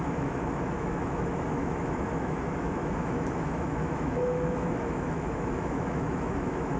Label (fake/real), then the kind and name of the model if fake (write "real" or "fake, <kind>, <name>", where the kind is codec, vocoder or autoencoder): fake, autoencoder, DAC-VAE